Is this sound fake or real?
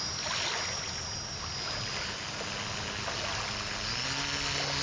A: real